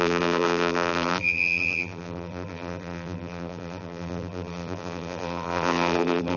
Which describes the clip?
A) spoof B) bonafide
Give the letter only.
A